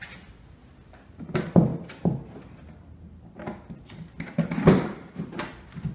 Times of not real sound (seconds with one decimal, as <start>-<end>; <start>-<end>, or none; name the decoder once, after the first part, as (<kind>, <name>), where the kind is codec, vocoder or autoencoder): none